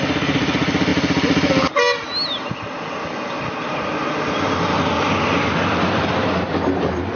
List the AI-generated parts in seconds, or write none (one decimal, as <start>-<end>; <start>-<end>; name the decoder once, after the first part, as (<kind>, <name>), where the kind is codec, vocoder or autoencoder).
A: none